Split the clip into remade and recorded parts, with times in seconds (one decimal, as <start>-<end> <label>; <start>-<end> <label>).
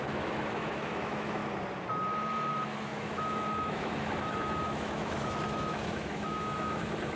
0.0-1.4 remade; 1.4-2.5 recorded; 2.5-7.2 remade